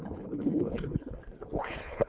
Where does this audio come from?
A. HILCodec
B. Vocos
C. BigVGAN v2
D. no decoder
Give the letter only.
A